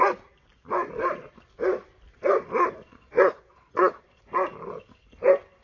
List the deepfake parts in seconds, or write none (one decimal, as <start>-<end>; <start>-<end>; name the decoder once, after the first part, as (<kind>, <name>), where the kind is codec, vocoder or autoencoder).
2.8-4.2 (vocoder, Vocos)